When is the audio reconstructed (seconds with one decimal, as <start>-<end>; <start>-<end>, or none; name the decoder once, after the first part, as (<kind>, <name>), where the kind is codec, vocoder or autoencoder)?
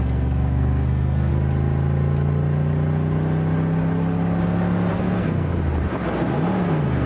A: 0.0-1.3 (codec, SNAC); 4.9-5.5; 6.6-7.1